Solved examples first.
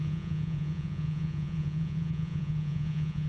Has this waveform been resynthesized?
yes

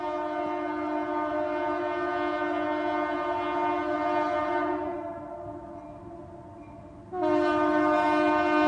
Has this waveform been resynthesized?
no